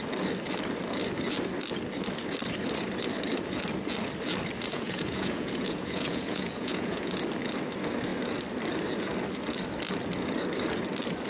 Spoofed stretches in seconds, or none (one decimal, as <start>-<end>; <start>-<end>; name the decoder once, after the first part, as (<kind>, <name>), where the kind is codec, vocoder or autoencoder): 4.7-7.2 (vocoder, Vocos)